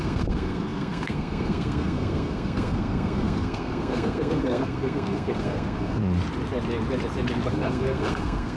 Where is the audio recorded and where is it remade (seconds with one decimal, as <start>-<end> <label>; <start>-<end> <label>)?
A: 0.0-6.0 remade; 6.0-7.5 recorded; 7.5-8.6 remade